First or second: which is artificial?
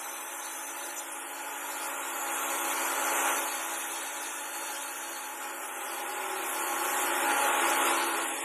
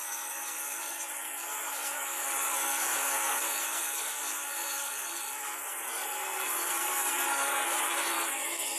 second